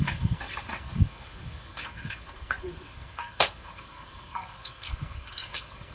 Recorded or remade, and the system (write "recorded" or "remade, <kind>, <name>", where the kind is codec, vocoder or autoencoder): remade, codec, SNAC